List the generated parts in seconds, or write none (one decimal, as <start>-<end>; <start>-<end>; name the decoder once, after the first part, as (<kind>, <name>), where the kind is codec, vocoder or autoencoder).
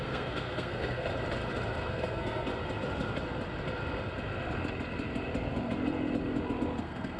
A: 0.0-1.1 (codec, SNAC); 1.9-2.5; 6.8-7.2